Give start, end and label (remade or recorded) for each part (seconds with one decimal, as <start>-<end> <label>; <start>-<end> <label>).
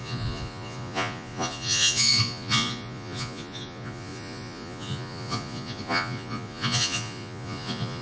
0.0-8.0 remade